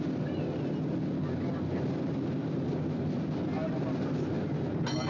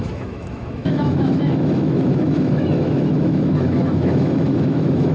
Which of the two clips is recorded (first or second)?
first